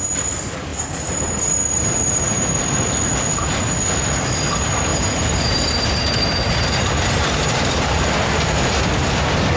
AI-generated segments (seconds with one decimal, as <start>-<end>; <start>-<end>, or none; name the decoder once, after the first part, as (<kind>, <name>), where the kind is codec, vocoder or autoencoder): 0.7-2.6 (vocoder, BigVGAN v2); 4.9-8.1